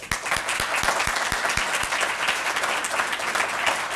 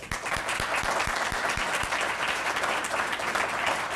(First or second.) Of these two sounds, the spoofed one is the second